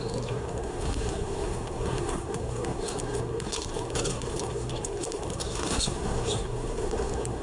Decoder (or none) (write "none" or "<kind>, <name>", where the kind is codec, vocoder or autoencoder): codec, SNAC